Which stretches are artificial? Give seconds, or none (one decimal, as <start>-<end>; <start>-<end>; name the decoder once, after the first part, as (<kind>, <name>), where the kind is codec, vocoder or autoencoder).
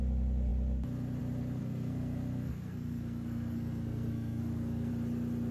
1.6-4.9 (codec, SNAC)